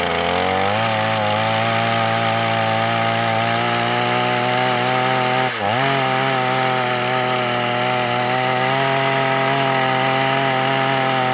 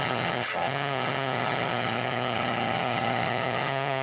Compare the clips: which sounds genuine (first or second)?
first